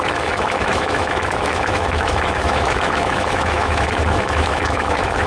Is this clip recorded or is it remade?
remade